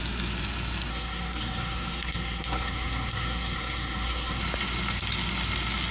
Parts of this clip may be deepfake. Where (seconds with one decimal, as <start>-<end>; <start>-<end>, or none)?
0.9-4.4